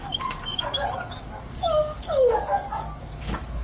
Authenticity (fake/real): fake